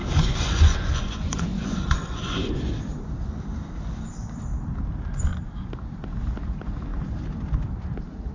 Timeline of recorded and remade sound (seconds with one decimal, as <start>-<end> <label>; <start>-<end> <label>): 0.0-2.6 remade; 2.6-8.3 recorded